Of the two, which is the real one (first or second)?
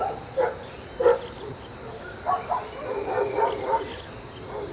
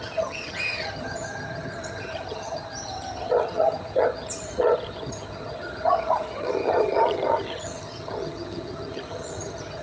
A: first